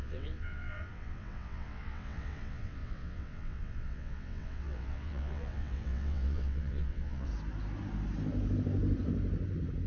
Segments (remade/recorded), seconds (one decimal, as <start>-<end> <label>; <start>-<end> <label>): 0.0-7.3 remade; 7.3-9.9 recorded